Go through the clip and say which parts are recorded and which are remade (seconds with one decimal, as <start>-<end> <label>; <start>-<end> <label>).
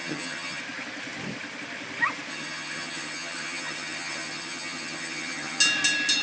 0.0-0.6 remade; 0.6-2.3 recorded; 2.3-5.6 remade; 5.6-6.2 recorded